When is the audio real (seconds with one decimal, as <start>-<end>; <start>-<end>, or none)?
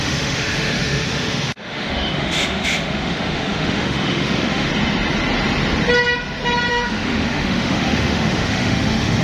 4.7-6.7